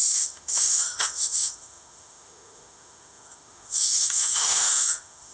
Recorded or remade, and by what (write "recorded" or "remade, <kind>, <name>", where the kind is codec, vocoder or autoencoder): remade, autoencoder, DAC-VAE